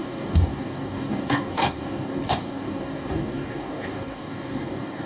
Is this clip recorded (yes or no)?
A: no